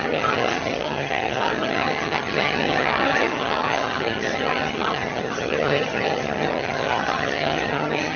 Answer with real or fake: fake